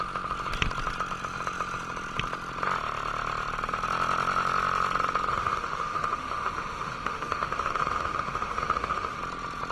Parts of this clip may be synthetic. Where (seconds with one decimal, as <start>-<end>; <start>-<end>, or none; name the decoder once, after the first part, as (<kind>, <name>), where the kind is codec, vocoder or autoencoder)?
5.3-9.2 (autoencoder, DAC-VAE)